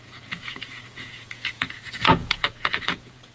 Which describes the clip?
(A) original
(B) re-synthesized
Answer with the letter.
B